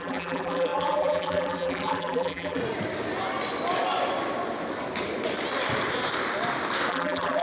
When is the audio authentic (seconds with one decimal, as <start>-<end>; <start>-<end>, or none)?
2.6-6.9